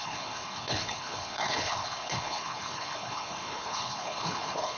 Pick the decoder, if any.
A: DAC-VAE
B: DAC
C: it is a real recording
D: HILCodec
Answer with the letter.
D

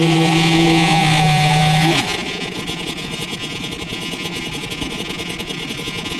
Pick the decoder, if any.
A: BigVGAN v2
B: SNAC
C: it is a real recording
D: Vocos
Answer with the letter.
D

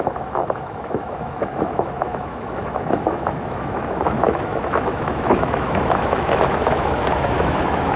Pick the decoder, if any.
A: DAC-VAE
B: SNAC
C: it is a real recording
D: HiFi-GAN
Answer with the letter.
A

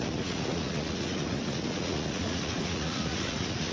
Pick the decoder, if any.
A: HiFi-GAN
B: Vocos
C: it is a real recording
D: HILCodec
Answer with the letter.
B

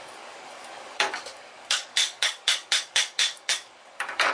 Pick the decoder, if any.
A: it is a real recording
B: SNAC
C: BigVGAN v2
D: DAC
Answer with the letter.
D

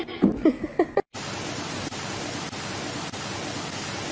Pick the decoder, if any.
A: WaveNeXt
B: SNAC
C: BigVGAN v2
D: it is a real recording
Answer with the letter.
D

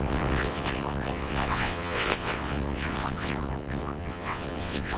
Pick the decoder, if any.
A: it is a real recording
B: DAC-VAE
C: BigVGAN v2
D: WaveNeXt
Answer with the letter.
D